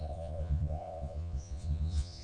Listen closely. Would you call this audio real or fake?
fake